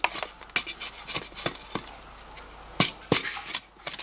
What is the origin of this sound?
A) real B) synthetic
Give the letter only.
A